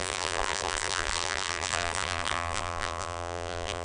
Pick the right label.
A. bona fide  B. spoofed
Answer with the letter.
B